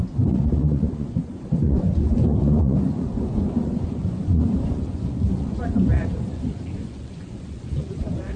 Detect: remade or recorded remade